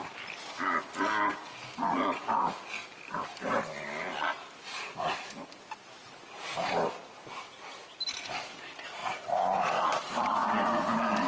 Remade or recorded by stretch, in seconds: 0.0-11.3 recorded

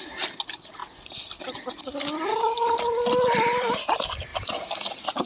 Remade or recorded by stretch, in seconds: 0.0-4.3 recorded; 4.3-5.3 remade

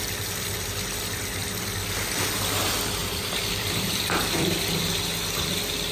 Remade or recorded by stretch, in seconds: 0.0-3.0 recorded; 3.0-4.8 remade; 4.8-5.9 recorded